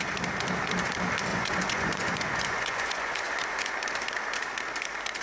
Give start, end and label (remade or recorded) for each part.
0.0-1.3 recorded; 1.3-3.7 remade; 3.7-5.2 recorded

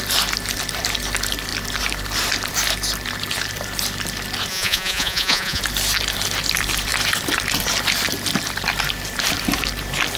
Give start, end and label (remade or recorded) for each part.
0.0-4.5 recorded; 4.5-5.6 remade; 5.6-10.2 recorded

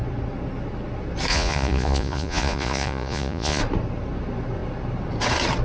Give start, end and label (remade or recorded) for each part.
0.0-1.3 recorded; 1.3-3.6 remade; 3.6-5.6 recorded

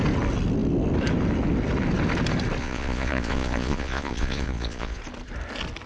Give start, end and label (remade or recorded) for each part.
0.0-2.6 recorded; 2.6-5.0 remade; 5.0-5.9 recorded